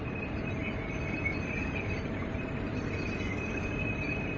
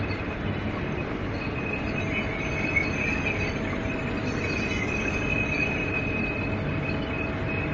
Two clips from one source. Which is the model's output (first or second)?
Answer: first